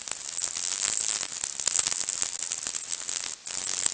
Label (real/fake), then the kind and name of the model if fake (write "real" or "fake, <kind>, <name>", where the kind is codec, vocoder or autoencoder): real